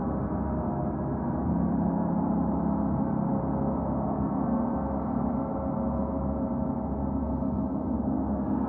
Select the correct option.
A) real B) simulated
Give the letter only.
A